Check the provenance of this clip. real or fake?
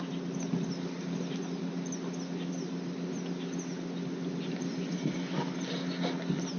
real